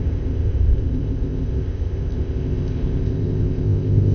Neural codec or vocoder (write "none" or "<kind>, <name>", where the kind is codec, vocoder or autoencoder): codec, ZipCodec